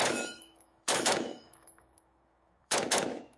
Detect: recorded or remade remade